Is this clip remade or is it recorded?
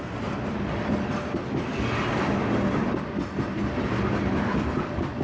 recorded